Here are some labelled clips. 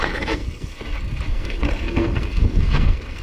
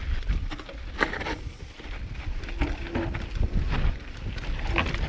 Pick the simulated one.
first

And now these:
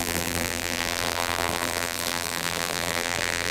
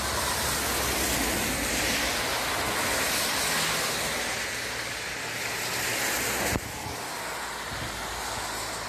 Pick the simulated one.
first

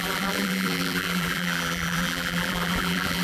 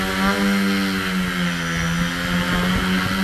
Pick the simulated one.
first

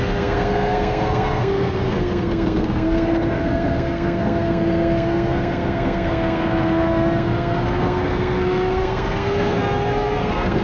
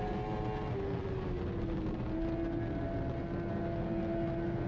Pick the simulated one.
first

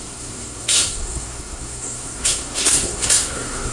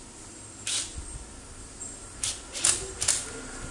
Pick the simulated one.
first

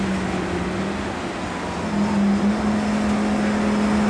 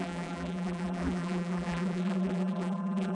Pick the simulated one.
second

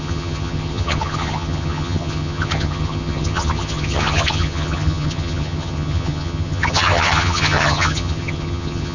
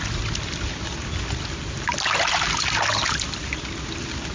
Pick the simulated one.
first